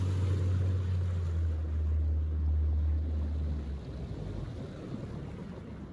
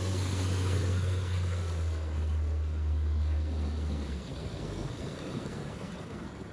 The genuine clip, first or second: first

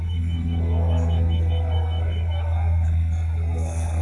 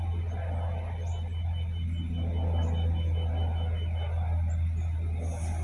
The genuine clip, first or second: second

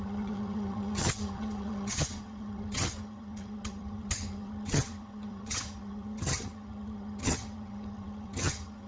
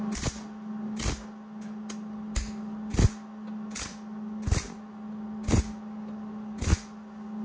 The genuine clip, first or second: second